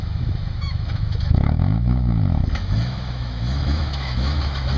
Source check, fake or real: fake